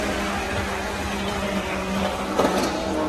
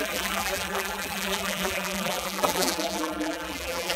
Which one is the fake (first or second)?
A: second